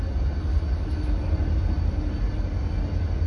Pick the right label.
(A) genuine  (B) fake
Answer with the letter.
A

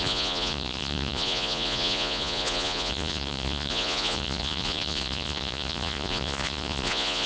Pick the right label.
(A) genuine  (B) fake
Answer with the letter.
B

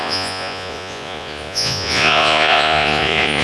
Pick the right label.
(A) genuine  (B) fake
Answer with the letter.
B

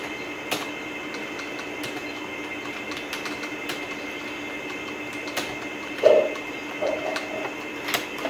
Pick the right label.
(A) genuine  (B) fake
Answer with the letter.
A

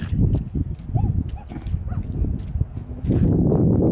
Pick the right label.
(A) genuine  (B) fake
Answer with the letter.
A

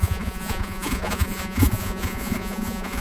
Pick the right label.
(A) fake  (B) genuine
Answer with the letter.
A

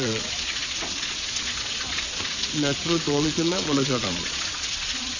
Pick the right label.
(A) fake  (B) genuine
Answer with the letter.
A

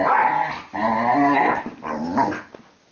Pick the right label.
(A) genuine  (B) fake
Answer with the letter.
A